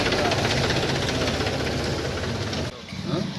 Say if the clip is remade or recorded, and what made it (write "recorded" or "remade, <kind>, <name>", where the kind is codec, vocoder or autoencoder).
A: recorded